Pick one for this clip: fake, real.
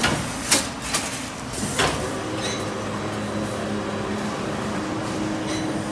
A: real